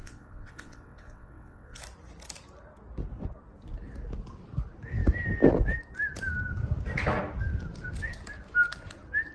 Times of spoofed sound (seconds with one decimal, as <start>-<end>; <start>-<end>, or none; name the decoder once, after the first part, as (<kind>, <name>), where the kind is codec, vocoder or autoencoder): 0.0-1.8 (vocoder, WaveNeXt)

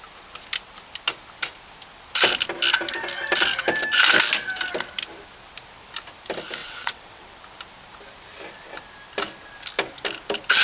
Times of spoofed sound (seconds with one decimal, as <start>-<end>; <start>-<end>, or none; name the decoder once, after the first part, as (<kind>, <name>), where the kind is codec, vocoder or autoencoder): 6.6-7.4 (vocoder, WaveNeXt)

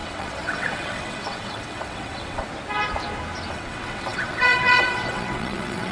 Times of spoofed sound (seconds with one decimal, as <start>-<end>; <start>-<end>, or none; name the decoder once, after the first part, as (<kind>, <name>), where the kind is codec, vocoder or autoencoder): 0.0-2.5 (vocoder, WaveNeXt); 3.5-5.9

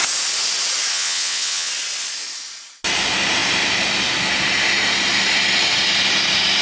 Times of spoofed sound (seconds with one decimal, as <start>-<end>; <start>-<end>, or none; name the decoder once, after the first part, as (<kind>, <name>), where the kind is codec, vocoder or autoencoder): 0.9-1.7 (vocoder, WaveNeXt)

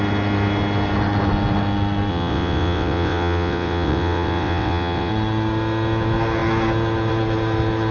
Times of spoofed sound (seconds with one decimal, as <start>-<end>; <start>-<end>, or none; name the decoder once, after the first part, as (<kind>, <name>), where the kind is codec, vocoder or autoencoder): 2.1-5.1 (vocoder, WaveNeXt)

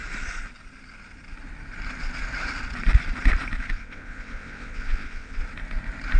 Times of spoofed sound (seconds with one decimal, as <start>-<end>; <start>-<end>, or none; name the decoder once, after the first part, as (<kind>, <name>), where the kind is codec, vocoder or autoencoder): 3.7-5.4 (vocoder, WaveNeXt)

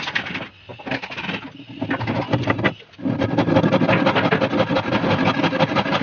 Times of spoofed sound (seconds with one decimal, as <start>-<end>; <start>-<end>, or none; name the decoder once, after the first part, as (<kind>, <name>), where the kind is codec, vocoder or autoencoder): none